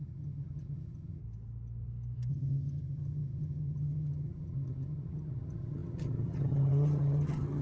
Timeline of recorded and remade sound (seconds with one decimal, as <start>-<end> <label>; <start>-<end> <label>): 0.0-1.2 remade; 1.2-2.3 recorded; 2.3-7.6 remade